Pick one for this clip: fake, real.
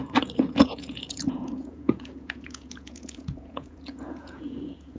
fake